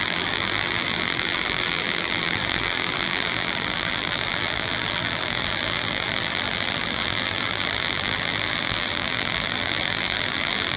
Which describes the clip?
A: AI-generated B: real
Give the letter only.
A